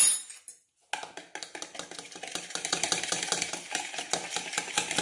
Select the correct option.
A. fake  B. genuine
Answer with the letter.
B